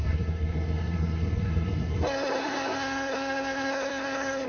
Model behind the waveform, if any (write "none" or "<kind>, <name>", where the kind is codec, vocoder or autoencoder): codec, SNAC